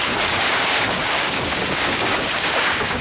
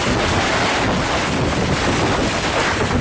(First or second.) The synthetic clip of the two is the first